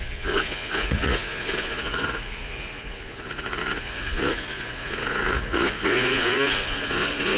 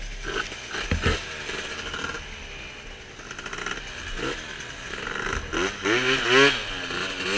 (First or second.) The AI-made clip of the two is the first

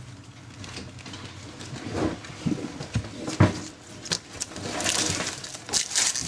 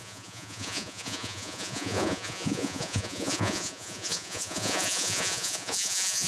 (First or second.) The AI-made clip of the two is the second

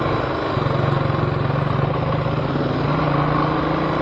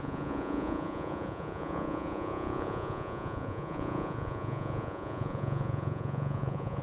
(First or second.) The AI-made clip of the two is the second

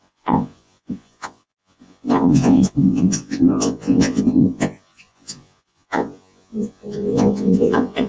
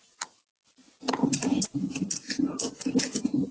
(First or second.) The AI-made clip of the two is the first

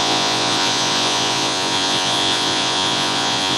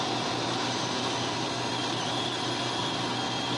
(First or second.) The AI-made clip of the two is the first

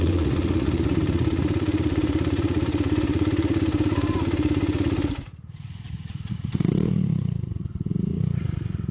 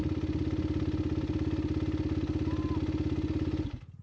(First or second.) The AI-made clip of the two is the first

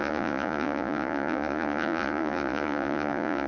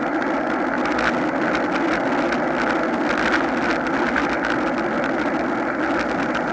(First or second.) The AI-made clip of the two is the first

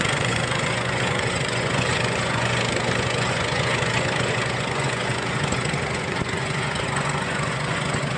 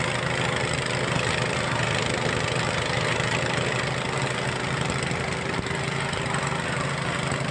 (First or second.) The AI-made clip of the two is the first